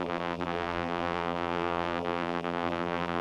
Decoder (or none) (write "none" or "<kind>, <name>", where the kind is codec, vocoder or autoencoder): vocoder, BigVGAN v2